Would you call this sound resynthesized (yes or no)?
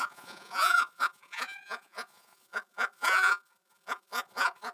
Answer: yes